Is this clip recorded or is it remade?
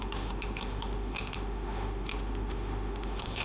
remade